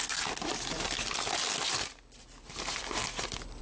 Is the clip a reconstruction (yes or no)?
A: no